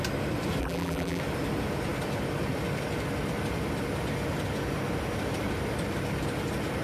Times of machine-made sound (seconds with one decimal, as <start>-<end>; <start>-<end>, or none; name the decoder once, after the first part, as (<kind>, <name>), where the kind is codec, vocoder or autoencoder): 0.6-1.2 (vocoder, BigVGAN v2)